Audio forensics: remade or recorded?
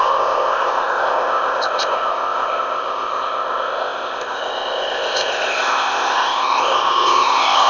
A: remade